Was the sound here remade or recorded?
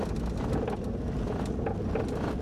recorded